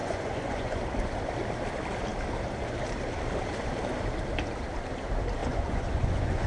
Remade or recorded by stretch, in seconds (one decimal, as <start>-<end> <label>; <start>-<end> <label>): 0.0-0.8 remade; 0.8-5.4 recorded; 5.4-6.5 remade